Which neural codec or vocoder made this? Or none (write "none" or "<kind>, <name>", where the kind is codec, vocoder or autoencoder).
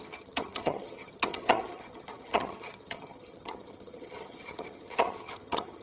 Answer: vocoder, HiFi-GAN